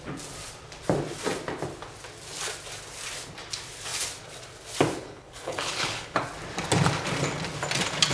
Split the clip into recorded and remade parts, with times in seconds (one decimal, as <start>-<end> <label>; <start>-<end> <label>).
0.0-5.0 recorded; 5.0-6.2 remade; 6.2-8.1 recorded